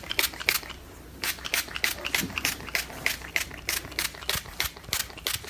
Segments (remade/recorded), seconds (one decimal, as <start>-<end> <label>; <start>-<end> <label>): 0.0-5.5 recorded